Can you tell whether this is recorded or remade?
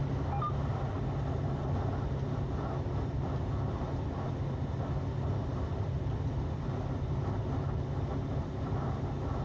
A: recorded